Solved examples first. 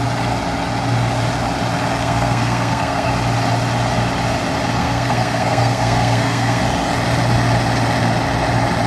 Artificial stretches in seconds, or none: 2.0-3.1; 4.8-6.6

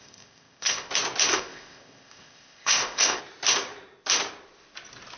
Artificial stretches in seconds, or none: 0.0-0.9; 1.3-3.2